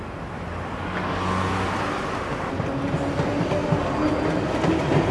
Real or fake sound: real